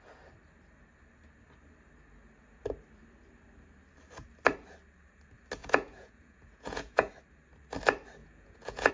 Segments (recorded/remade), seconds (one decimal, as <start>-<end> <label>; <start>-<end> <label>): 0.0-5.6 recorded; 5.6-7.1 remade; 7.1-8.2 recorded; 8.2-8.9 remade